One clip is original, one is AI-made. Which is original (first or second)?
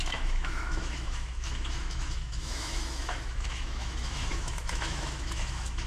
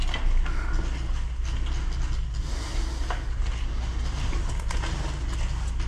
second